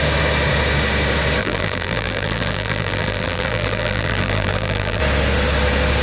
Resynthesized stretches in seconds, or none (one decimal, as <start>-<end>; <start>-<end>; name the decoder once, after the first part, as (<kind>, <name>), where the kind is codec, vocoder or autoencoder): 1.4-5.0 (vocoder, BigVGAN v2)